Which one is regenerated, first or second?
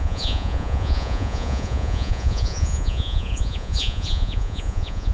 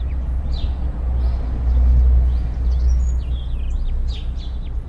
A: first